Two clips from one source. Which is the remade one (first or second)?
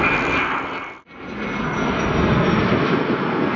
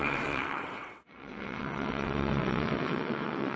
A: second